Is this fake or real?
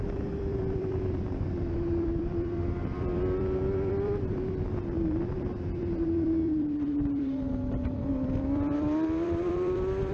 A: fake